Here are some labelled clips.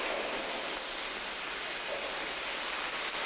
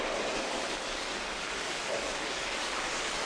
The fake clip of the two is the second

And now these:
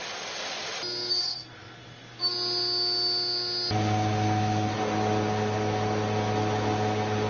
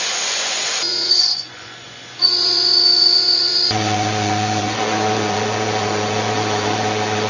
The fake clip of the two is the second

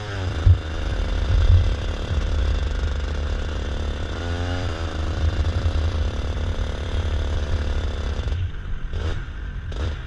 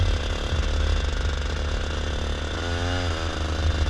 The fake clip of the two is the first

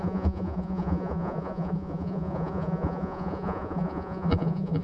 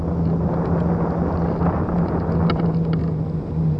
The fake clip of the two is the first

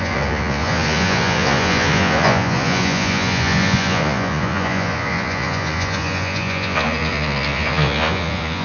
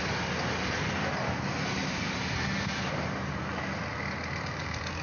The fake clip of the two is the first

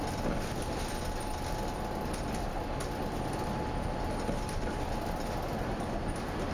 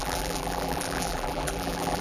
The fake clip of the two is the second